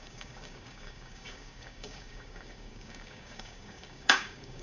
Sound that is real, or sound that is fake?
fake